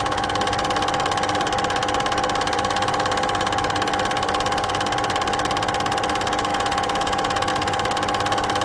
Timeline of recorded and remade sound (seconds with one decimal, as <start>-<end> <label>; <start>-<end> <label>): 0.0-6.5 recorded; 6.5-7.5 remade; 7.5-8.6 recorded